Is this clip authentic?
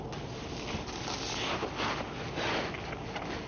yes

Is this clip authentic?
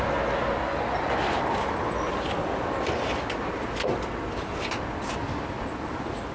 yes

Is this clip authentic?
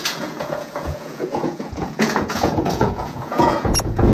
no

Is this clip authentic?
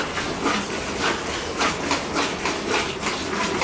yes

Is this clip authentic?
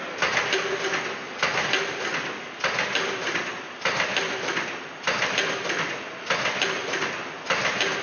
yes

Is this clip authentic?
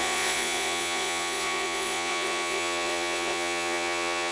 no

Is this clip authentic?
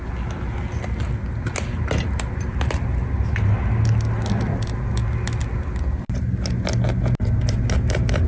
yes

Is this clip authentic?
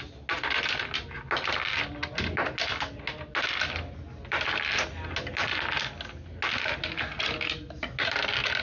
yes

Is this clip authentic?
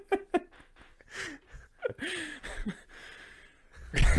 yes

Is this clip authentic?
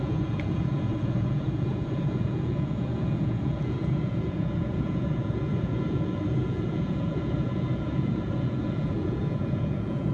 no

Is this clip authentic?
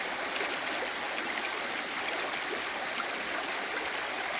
yes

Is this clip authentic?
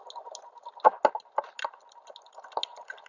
yes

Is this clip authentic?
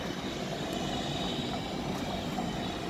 yes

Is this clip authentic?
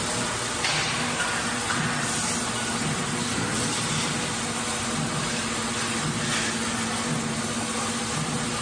yes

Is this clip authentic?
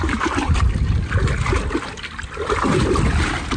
yes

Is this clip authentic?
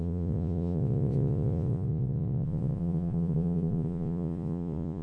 no